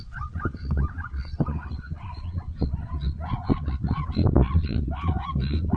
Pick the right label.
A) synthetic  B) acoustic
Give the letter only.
A